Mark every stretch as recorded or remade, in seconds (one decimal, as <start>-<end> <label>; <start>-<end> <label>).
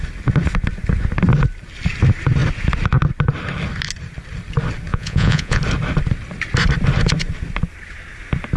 0.0-4.9 recorded; 4.9-5.6 remade; 5.6-8.6 recorded